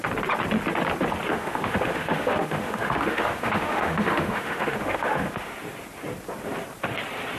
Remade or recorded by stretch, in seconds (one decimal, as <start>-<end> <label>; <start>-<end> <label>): 0.0-1.3 recorded; 1.3-5.5 remade; 5.5-7.4 recorded